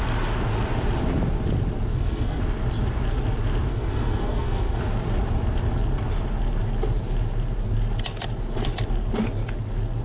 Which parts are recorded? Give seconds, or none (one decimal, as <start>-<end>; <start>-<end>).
0.0-1.9; 2.4-3.7; 4.8-10.0

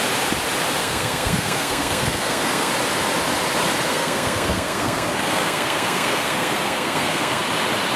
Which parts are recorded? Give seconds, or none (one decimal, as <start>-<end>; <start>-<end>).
0.0-0.8; 2.7-3.9; 7.4-8.0

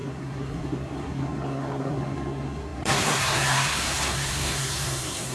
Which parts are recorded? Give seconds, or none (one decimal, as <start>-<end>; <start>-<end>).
none